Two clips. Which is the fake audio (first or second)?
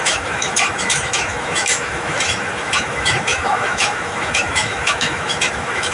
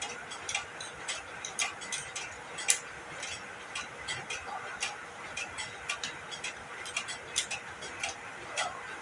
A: first